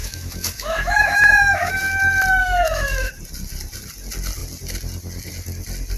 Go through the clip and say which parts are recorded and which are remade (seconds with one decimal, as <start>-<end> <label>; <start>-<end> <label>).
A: 0.0-1.8 remade; 1.8-2.4 recorded; 2.4-3.1 remade; 3.1-6.0 recorded